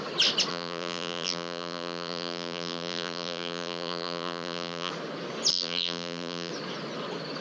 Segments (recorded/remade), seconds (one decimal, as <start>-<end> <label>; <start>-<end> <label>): 0.0-0.5 recorded; 0.5-4.9 remade; 4.9-5.5 recorded; 5.5-6.5 remade; 6.5-7.4 recorded